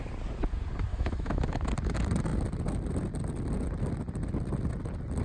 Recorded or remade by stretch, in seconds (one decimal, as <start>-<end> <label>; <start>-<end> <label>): 0.0-0.9 recorded; 0.9-1.7 remade; 1.7-5.2 recorded